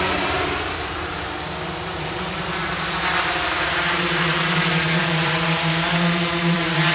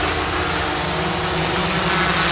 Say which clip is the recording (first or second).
second